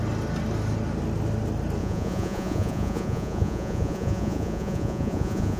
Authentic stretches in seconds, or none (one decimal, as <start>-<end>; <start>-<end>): 0.0-1.8